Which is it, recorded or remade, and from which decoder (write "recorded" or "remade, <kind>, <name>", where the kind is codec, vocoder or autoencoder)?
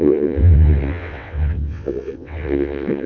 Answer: remade, vocoder, WaveNeXt